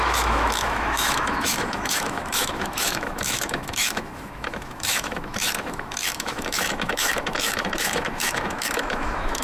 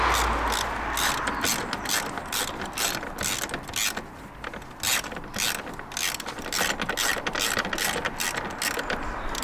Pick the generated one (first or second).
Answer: first